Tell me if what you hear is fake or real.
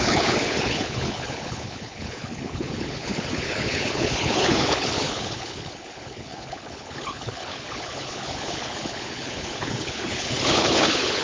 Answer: fake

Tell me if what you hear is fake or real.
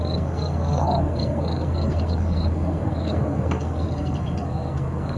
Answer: fake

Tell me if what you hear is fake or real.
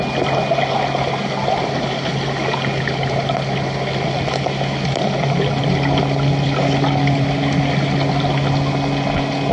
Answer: real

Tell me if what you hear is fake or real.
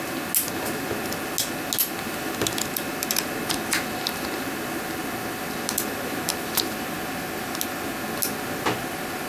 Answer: real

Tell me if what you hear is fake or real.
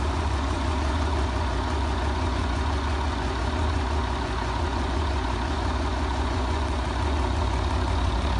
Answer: fake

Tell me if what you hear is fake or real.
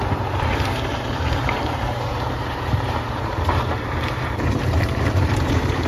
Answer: fake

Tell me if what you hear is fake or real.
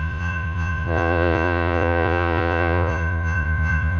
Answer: fake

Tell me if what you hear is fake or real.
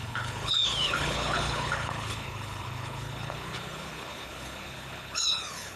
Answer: fake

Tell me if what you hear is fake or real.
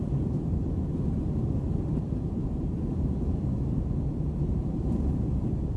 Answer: fake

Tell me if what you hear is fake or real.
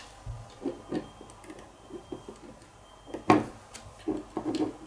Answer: real